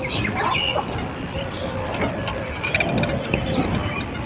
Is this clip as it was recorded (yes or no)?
yes